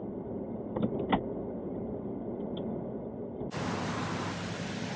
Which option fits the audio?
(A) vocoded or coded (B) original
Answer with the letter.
B